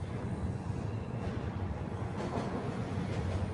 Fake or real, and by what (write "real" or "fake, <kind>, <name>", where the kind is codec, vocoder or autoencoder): fake, vocoder, Vocos